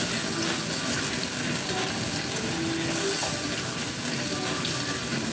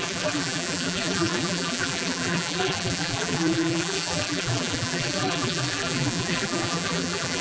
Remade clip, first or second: second